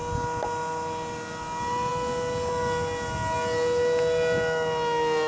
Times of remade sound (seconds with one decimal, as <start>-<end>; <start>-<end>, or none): none